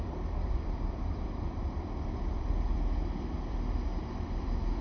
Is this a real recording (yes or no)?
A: no